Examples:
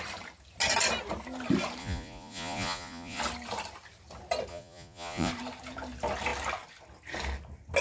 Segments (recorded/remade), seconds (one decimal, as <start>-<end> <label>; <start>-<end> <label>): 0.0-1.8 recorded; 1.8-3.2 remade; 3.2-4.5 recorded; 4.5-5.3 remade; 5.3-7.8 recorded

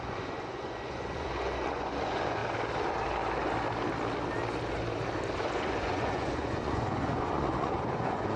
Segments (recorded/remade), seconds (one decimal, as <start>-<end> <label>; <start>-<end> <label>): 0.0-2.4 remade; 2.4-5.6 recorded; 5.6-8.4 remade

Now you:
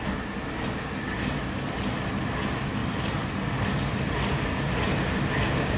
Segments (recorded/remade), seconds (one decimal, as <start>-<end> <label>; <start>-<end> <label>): 0.0-5.8 recorded

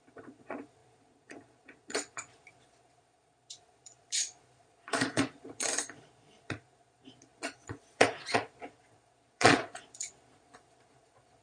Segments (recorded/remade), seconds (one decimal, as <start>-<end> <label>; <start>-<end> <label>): 0.0-11.4 remade

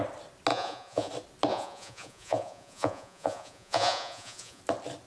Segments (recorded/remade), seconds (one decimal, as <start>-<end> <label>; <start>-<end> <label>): 0.0-0.5 recorded; 0.5-1.1 remade; 1.1-1.5 recorded; 1.5-4.6 remade; 4.6-5.1 recorded

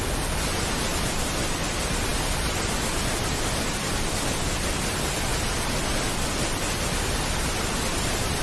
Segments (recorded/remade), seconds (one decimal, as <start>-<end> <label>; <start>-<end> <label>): 0.0-8.4 recorded